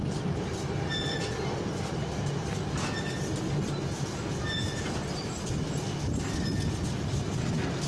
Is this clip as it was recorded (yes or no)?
yes